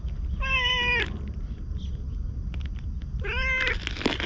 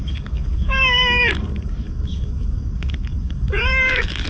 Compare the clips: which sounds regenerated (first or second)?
second